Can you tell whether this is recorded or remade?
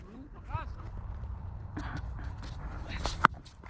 remade